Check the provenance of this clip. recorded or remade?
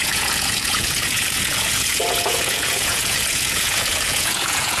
remade